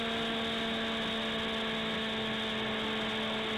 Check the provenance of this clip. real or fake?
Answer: real